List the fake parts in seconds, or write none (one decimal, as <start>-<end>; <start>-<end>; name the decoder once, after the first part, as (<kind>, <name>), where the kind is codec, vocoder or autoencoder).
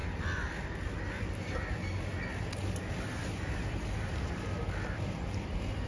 none